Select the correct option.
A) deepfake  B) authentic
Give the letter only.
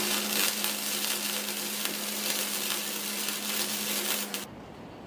B